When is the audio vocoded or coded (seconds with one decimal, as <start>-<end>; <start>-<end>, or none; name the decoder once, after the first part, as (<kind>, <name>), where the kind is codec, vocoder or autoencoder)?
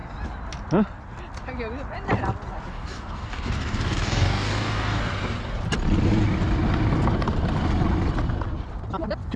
2.7-5.0 (codec, DAC)